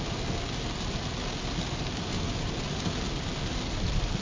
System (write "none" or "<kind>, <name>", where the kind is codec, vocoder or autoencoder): none